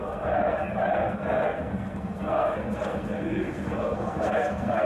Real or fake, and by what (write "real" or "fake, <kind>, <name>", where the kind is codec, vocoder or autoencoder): fake, codec, SNAC